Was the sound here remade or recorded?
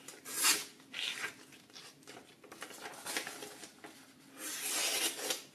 recorded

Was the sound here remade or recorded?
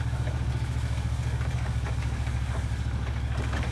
remade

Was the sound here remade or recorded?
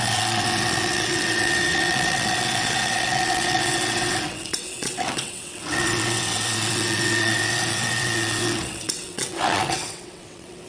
remade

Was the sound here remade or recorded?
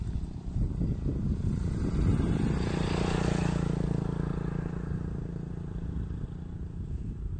recorded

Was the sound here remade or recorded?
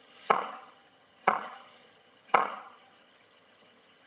remade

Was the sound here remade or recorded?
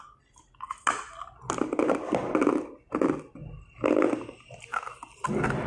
recorded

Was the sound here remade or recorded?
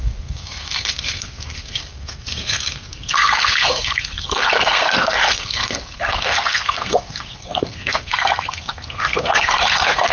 remade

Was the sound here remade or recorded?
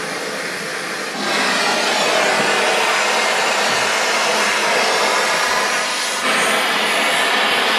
recorded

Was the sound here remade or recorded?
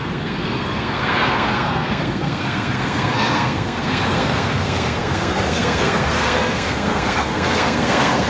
remade